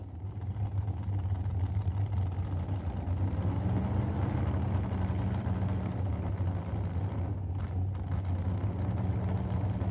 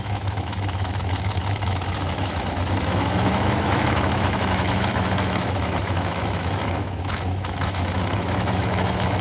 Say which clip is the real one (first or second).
first